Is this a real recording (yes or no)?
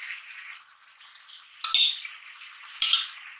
yes